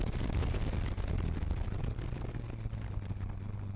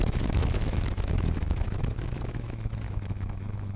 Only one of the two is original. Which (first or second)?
first